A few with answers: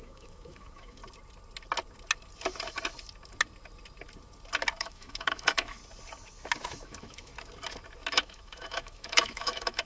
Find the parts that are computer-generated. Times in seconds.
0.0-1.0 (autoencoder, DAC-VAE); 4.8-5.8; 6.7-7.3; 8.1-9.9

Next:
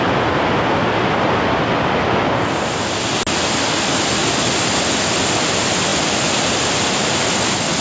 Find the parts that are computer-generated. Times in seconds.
none

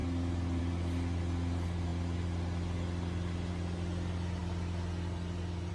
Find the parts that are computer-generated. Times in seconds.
none

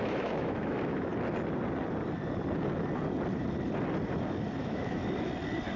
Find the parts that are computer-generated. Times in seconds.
0.0-1.1 (autoencoder, DAC-VAE); 4.6-5.0

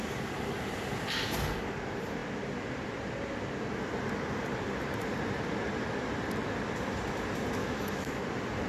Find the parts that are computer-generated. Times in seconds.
7.6-8.2 (autoencoder, DAC-VAE)

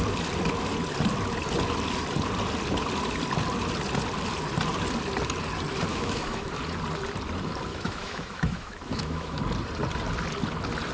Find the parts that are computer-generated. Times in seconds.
5.9-6.5 (autoencoder, DAC-VAE); 7.7-9.4

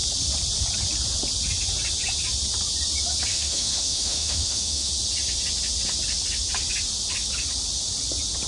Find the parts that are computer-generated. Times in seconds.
3.3-4.9 (autoencoder, DAC-VAE)